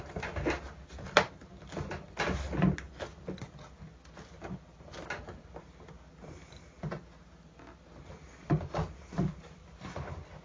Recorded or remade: recorded